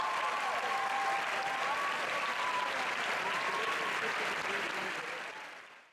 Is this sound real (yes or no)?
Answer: no